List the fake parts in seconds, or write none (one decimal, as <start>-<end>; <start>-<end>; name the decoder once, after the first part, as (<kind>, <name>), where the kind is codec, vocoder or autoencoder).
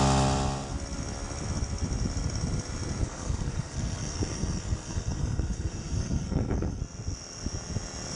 3.0-6.8 (codec, SNAC)